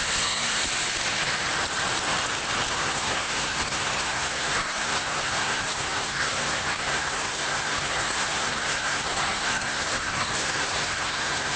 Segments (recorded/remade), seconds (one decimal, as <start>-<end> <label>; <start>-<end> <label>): 0.0-0.6 remade; 0.6-2.7 recorded; 2.7-11.6 remade